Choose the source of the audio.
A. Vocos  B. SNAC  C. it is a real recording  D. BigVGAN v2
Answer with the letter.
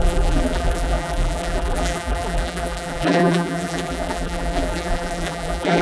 D